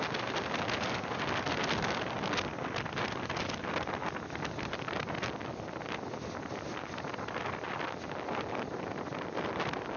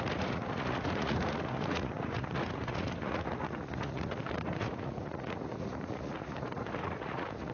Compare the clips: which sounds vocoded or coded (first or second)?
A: second